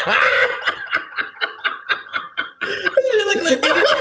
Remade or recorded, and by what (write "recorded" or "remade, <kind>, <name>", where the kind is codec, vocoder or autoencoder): remade, vocoder, HiFi-GAN